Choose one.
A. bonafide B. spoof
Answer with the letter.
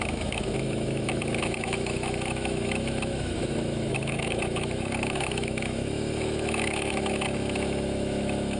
B